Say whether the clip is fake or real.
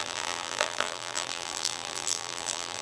fake